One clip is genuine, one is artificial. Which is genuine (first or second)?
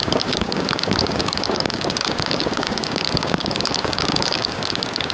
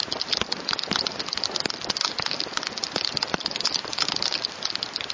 second